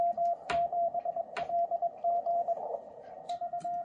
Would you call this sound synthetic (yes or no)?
yes